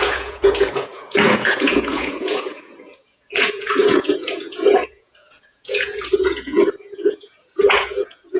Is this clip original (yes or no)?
no